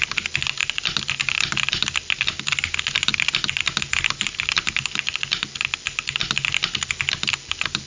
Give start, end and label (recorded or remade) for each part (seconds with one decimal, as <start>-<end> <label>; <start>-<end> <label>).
0.0-7.9 recorded